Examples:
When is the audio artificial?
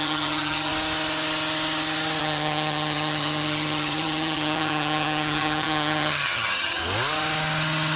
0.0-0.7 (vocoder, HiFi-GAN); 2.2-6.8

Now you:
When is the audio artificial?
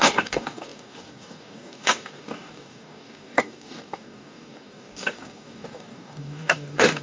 0.0-7.0 (codec, DAC)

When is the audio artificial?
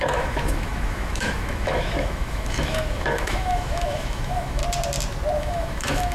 0.0-4.6 (autoencoder, DAC-VAE); 5.4-6.1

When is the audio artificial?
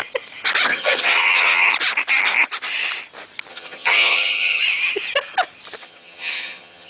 0.7-1.7 (vocoder, HiFi-GAN); 3.5-4.6; 5.8-6.9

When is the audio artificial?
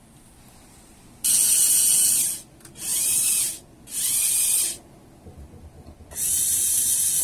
2.9-3.5 (vocoder, BigVGAN v2)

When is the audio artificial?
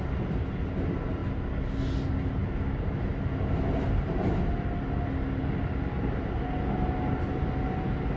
none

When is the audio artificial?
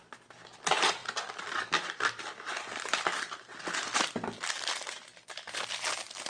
none